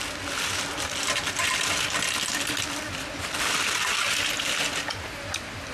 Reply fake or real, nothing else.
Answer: real